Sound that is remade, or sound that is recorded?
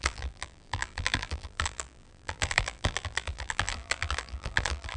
remade